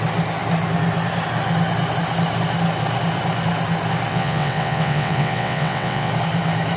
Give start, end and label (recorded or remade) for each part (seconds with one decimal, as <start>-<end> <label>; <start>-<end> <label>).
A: 0.0-4.1 recorded; 4.1-6.1 remade; 6.1-6.8 recorded